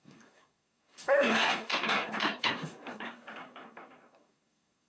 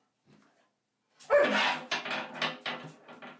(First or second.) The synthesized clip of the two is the first